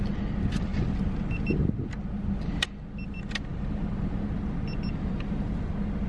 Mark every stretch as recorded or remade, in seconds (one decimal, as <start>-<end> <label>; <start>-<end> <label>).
0.0-6.1 recorded